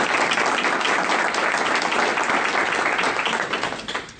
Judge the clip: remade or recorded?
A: recorded